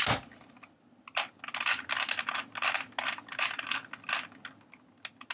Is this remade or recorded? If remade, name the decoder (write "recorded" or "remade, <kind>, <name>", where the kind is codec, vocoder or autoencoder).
recorded